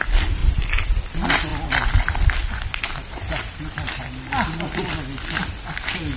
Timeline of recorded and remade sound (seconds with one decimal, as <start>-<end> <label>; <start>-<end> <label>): 0.0-6.2 remade